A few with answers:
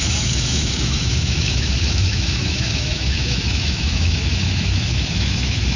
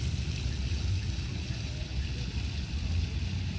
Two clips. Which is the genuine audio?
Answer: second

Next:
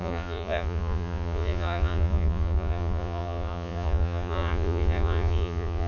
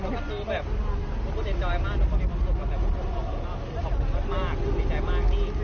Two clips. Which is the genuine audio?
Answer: second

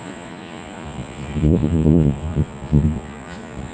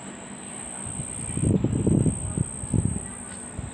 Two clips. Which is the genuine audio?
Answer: second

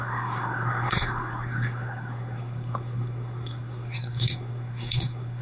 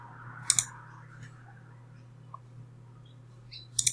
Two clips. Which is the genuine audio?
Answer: second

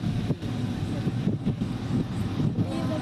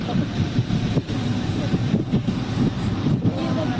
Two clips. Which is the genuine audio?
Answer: first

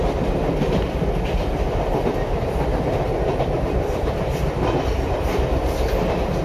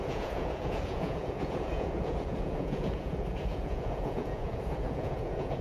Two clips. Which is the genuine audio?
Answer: first